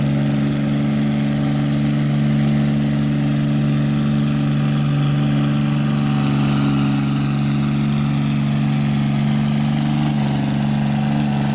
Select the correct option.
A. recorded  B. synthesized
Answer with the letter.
A